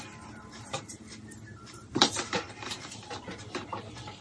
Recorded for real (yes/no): no